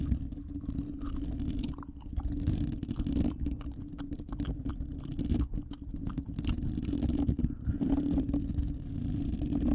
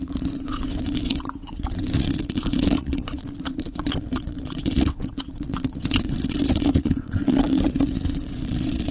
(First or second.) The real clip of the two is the first